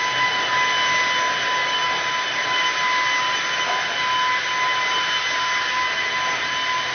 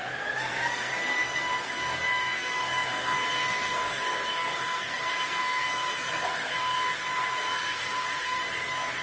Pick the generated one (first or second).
second